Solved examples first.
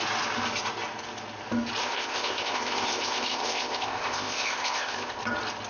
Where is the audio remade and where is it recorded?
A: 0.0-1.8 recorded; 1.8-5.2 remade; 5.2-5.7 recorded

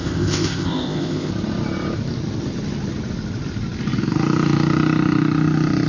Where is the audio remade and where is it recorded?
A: 0.0-1.3 remade; 1.3-5.9 recorded

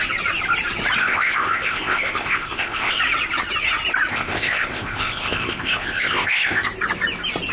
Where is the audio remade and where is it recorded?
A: 0.0-1.0 recorded; 1.0-3.0 remade; 3.0-4.1 recorded; 4.1-6.7 remade; 6.7-7.5 recorded

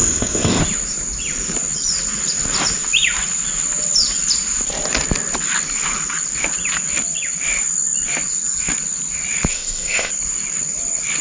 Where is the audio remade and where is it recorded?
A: 0.0-0.6 remade; 0.6-9.5 recorded; 9.5-10.1 remade; 10.1-11.2 recorded